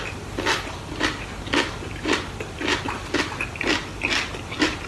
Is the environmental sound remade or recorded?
recorded